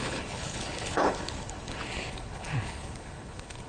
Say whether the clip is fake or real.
fake